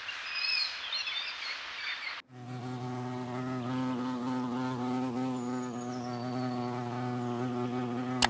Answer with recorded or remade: recorded